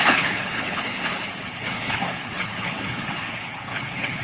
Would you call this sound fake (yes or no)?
yes